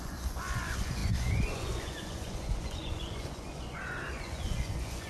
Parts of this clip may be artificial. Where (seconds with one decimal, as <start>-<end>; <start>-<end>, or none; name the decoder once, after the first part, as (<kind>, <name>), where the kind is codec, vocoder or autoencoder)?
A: 0.0-5.1 (vocoder, Vocos)